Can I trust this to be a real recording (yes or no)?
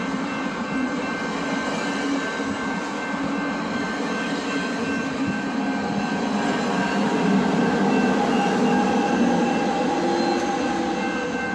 yes